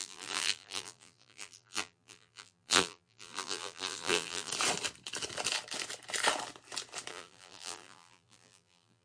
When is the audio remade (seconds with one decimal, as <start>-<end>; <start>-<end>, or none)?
0.0-4.5; 7.1-9.0